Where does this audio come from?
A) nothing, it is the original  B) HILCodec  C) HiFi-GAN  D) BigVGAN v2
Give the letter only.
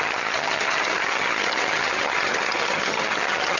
C